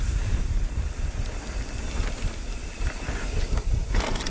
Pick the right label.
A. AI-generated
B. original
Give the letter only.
B